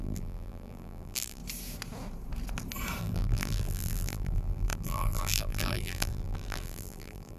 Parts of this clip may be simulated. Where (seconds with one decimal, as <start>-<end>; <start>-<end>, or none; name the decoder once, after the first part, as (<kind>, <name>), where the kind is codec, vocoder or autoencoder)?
0.0-1.4 (vocoder, BigVGAN v2); 3.0-7.4